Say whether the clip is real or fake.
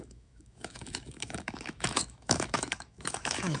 fake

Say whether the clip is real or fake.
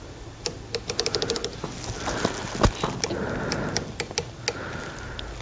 real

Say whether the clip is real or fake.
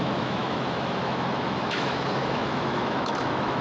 fake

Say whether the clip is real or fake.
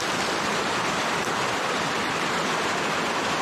real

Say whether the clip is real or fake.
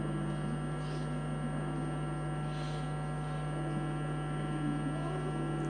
real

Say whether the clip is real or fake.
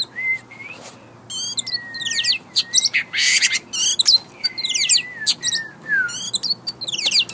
real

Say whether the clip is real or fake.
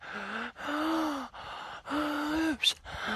real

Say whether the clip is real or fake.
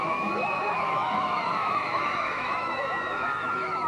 fake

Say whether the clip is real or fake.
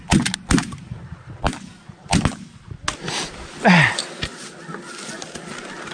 real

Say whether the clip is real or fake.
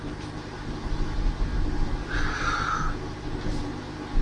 real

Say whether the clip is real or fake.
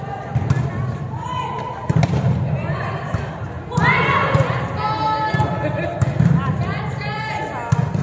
real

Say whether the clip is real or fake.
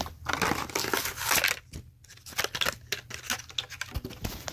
real